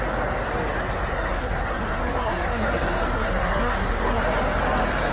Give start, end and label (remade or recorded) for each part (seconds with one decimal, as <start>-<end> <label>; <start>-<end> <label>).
0.0-1.1 recorded; 1.1-4.2 remade; 4.2-5.1 recorded